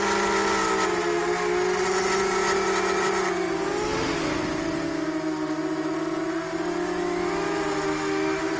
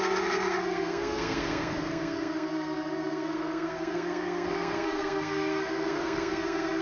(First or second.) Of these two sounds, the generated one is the second